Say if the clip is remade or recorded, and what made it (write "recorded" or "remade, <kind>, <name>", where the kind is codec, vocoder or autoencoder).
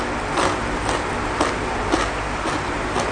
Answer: recorded